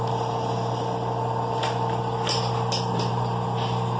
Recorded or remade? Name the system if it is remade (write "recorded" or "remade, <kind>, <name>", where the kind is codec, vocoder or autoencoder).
recorded